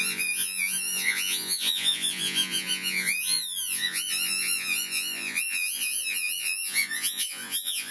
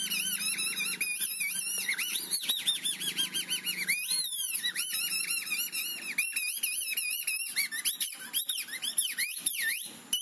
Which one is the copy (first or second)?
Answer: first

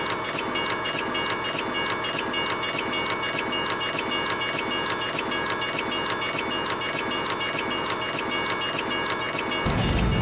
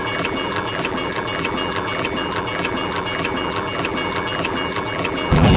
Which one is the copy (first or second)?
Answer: second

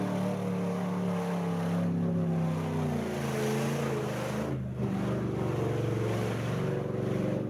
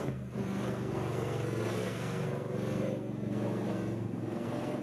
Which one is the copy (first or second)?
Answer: second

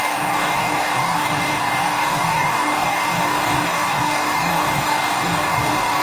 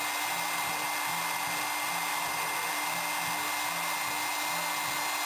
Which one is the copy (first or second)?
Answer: first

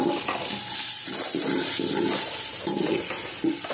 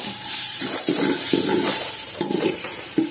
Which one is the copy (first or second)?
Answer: second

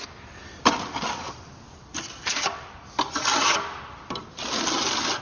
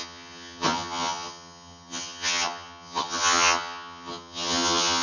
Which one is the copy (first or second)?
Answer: second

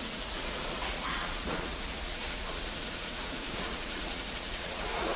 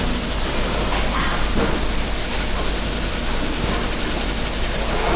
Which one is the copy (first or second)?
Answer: first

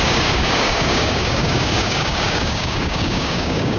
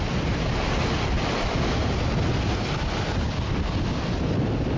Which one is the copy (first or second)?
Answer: first